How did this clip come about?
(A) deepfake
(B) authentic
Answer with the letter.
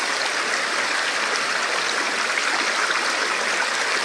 B